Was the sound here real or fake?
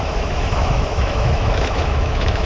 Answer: fake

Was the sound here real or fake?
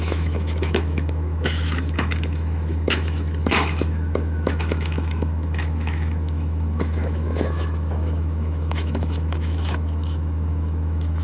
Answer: fake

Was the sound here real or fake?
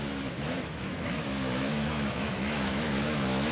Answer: fake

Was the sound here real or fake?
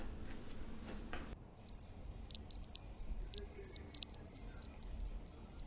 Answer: real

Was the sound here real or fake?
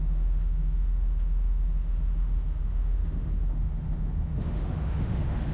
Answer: fake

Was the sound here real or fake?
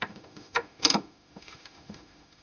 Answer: fake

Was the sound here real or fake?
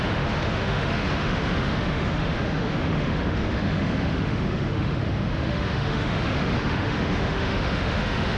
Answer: fake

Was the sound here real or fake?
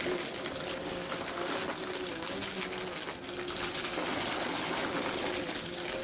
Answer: real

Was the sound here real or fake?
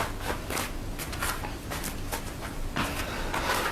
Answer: real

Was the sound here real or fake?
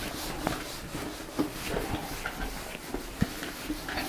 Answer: real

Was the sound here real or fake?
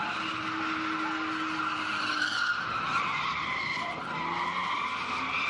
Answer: real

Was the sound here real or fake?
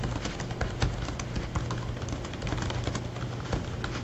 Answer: real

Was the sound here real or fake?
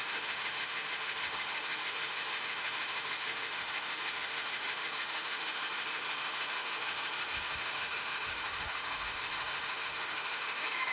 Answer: fake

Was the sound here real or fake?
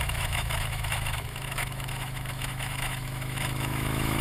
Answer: fake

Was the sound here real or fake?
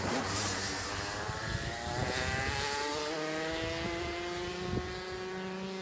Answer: real